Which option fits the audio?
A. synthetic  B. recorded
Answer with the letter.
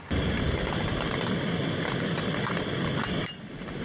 B